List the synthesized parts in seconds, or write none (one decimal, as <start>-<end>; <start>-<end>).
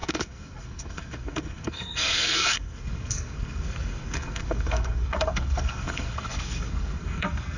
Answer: 0.0-7.6